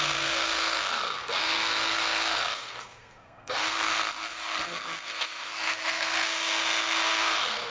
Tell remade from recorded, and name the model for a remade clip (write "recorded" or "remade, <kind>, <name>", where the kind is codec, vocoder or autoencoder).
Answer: remade, codec, SNAC